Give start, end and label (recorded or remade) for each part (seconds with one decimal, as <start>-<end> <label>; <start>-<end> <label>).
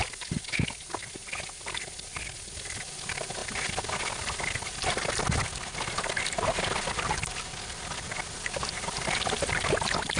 0.0-10.2 recorded